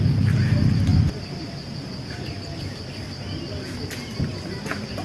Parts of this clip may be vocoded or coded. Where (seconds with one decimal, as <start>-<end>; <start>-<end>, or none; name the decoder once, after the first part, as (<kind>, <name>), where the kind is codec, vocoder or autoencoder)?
none